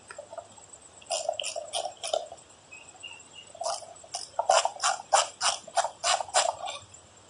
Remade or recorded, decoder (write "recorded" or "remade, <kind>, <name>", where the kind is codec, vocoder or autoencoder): recorded